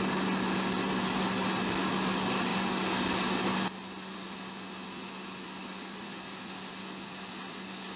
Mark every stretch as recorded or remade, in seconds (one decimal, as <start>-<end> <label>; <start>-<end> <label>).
0.0-8.0 recorded